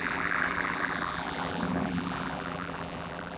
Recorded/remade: remade